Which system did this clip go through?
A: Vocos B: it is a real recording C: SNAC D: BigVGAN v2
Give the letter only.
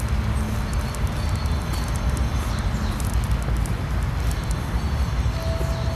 B